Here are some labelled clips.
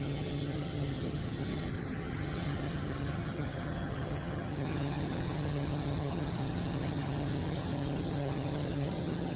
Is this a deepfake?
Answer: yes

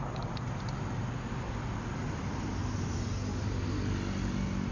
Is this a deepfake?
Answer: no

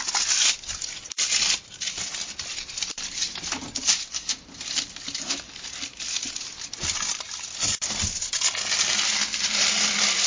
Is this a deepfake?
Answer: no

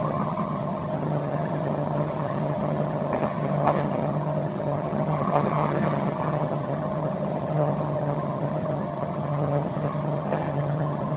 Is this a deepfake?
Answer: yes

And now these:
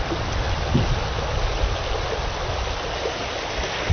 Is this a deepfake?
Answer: no